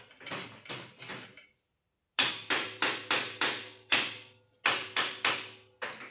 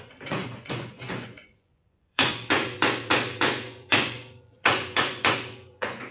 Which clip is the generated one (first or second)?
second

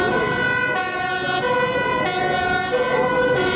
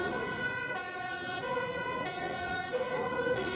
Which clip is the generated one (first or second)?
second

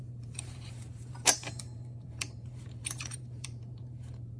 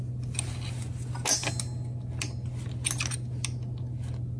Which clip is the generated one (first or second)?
first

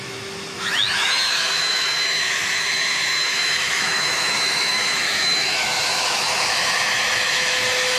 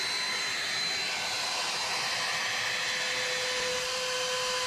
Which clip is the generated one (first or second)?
first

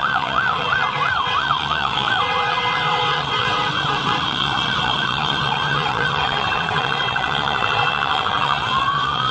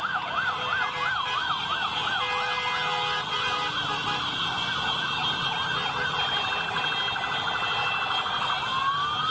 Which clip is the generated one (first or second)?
first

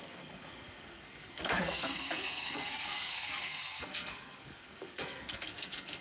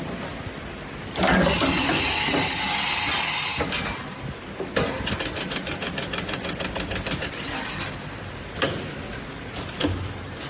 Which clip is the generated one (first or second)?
first